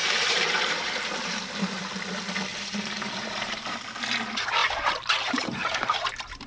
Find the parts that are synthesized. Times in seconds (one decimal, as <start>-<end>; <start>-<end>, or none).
0.0-1.1; 2.5-4.0; 4.6-6.1